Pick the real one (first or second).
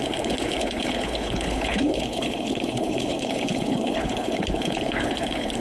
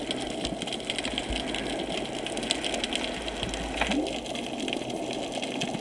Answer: second